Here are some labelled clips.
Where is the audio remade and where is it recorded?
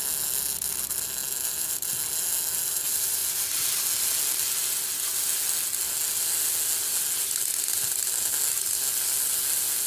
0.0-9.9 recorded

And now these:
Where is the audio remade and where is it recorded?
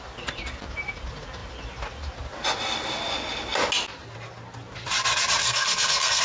0.0-5.4 recorded; 5.4-6.2 remade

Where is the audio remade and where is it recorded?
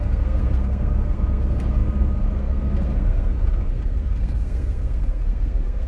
0.0-5.9 remade